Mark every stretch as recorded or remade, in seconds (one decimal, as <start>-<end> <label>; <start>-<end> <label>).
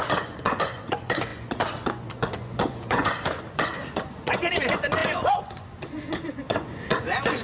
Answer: 0.0-7.4 remade